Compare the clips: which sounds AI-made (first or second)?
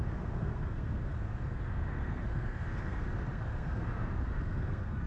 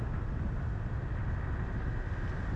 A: first